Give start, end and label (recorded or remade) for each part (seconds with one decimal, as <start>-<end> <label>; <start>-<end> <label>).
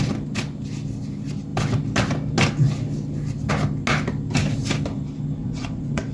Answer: 0.0-5.4 recorded; 5.4-6.1 remade